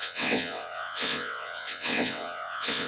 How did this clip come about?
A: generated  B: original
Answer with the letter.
A